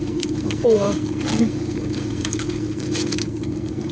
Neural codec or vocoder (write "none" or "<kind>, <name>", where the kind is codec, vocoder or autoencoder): codec, SNAC